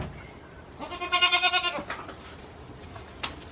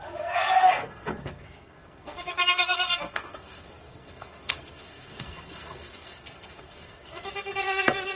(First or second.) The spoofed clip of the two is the second